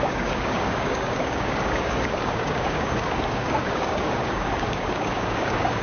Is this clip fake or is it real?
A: fake